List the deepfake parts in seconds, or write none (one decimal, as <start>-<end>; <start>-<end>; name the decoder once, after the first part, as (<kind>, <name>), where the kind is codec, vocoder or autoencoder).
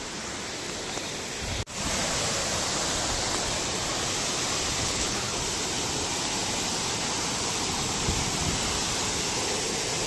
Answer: 4.8-5.4 (codec, HILCodec)